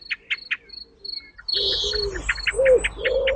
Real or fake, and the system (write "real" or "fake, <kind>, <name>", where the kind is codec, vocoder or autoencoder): real